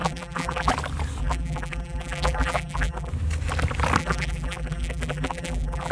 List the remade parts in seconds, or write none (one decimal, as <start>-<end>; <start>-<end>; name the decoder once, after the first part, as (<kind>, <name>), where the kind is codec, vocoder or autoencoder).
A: 0.0-0.7 (vocoder, BigVGAN v2); 1.2-3.1; 4.0-5.9